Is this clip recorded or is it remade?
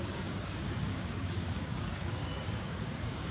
remade